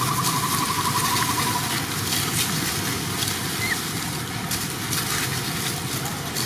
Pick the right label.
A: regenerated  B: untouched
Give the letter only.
B